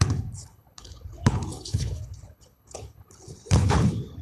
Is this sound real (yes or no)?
no